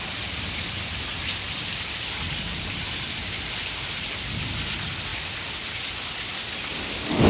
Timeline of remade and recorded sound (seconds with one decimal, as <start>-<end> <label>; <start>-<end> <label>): 0.0-7.3 recorded